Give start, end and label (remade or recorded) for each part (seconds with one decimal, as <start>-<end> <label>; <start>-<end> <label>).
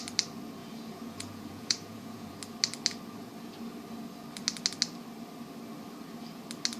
0.0-0.6 recorded; 0.6-2.3 remade; 2.3-6.8 recorded